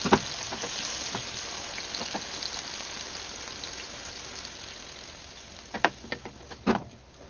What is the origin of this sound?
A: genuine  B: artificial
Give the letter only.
A